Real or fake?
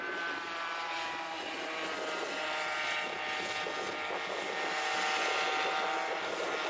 real